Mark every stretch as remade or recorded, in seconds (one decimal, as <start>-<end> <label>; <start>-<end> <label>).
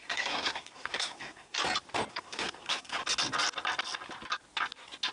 0.0-1.6 remade; 1.6-2.1 recorded; 2.1-3.0 remade; 3.0-5.1 recorded